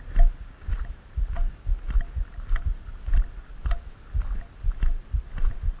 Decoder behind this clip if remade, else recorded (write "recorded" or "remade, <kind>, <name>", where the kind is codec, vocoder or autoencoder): recorded